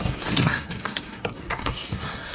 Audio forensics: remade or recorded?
remade